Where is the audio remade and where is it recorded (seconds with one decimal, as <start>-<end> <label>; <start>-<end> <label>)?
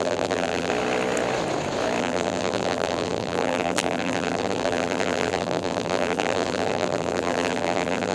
0.0-0.7 remade; 0.7-2.0 recorded; 2.0-8.1 remade